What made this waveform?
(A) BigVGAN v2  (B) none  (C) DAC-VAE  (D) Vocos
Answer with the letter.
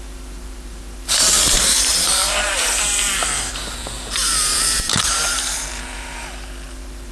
A